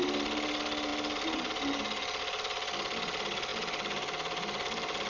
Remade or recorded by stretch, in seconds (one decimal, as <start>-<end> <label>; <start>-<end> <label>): 0.0-5.1 recorded